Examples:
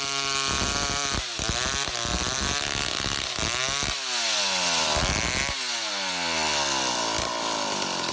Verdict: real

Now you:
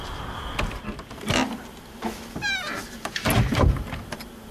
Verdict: real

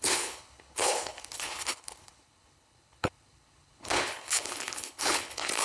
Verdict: fake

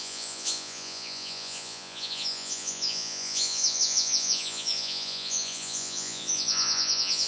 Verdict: fake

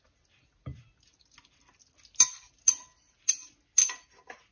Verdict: real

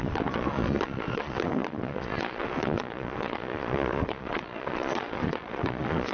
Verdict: fake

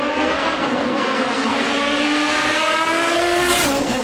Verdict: fake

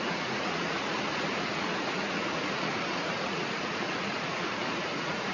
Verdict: fake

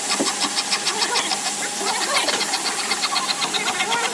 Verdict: real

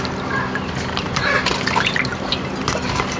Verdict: real